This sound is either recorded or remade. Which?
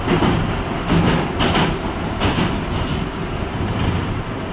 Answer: recorded